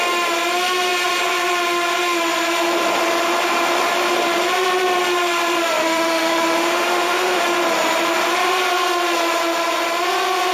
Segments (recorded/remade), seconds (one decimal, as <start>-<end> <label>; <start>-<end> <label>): 0.0-5.8 recorded; 5.8-7.4 remade; 7.4-10.5 recorded